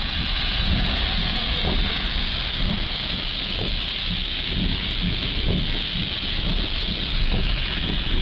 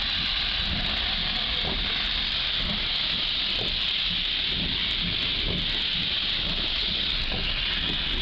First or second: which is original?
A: second